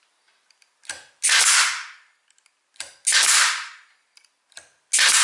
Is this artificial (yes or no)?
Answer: no